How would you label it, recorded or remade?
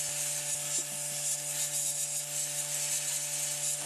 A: recorded